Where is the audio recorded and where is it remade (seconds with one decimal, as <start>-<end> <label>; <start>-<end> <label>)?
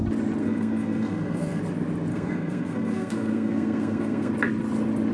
0.0-0.4 recorded; 0.4-1.6 remade; 1.6-2.1 recorded; 2.1-4.3 remade; 4.3-5.1 recorded